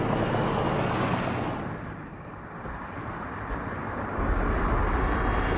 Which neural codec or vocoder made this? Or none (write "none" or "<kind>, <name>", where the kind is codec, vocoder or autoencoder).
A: none